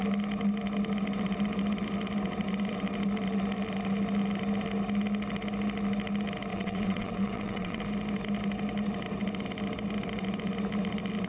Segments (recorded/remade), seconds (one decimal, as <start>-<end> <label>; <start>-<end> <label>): 0.0-6.5 recorded; 6.5-7.8 remade; 7.8-11.3 recorded